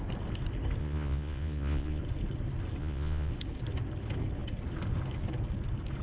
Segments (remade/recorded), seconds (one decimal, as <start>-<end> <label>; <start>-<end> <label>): 0.0-0.8 recorded; 0.8-2.0 remade; 2.0-2.8 recorded; 2.8-3.3 remade; 3.3-6.0 recorded